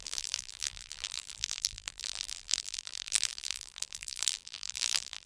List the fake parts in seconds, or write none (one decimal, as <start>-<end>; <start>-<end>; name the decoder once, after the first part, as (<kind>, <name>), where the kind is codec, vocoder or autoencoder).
0.0-5.3 (vocoder, BigVGAN v2)

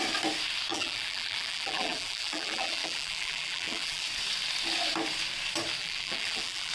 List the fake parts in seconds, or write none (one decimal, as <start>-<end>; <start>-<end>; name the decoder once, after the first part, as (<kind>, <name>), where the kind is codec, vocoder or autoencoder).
0.7-4.0 (vocoder, BigVGAN v2); 5.8-6.7

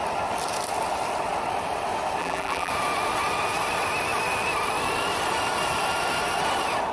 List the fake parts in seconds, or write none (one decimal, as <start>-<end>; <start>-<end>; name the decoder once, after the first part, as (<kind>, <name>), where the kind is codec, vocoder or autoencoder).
2.2-2.7 (vocoder, BigVGAN v2)

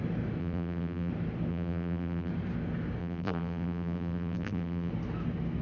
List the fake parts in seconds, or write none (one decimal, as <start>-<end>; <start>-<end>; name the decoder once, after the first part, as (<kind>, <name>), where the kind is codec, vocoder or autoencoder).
0.4-1.1 (vocoder, BigVGAN v2); 1.5-2.3; 3.0-4.9

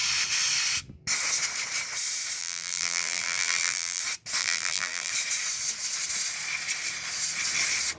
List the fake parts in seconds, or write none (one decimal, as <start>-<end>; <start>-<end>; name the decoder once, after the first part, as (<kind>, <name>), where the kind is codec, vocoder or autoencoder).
2.4-4.0 (vocoder, BigVGAN v2); 4.4-5.1

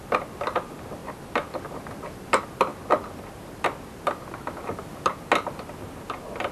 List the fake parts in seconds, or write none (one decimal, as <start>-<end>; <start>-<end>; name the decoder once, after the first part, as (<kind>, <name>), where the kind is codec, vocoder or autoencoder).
none

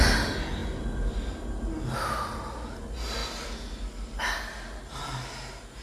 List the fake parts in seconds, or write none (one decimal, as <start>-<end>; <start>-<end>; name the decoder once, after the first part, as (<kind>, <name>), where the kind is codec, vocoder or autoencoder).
none

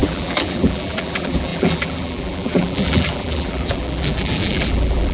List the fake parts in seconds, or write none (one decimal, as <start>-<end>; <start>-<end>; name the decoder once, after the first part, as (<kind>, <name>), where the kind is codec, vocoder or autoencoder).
0.0-5.1 (vocoder, BigVGAN v2)